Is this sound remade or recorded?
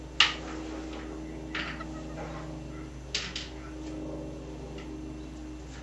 recorded